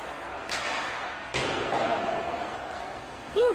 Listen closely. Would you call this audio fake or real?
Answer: fake